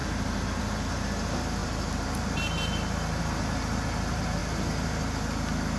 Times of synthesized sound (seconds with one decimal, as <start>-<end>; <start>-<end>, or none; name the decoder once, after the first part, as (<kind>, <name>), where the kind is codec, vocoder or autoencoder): 0.0-0.6 (vocoder, BigVGAN v2); 1.6-3.2